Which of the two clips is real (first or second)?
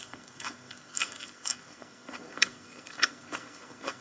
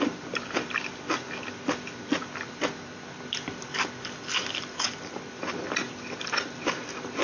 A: second